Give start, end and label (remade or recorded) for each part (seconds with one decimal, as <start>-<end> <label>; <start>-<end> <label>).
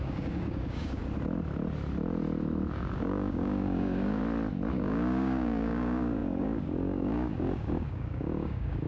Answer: 0.0-1.0 remade; 1.0-2.7 recorded; 2.7-4.2 remade; 4.2-4.7 recorded; 4.7-8.9 remade